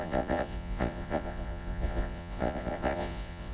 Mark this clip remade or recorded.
remade